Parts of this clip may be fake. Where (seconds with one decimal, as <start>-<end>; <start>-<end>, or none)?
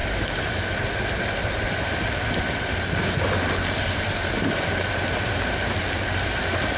0.0-0.6